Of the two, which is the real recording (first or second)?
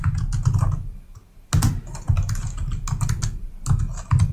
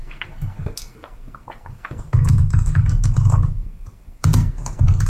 first